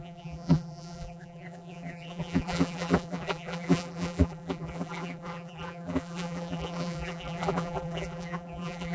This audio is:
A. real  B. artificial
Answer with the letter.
B